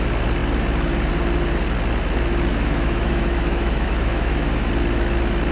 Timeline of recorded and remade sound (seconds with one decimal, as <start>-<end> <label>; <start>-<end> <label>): 0.0-2.5 recorded; 2.5-4.7 remade; 4.7-5.5 recorded